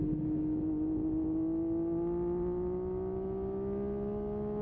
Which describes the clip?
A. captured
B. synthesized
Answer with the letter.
A